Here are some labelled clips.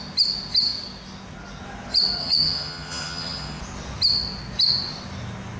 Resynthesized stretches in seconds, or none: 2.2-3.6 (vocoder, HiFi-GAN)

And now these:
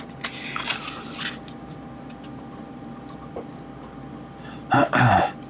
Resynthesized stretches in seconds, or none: none

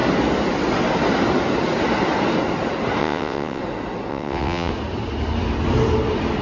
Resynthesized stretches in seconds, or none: 3.0-3.6 (vocoder, WaveNeXt); 4.1-4.7

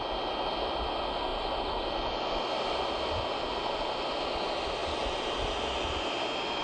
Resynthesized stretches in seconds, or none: none